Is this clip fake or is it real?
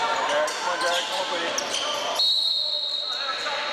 real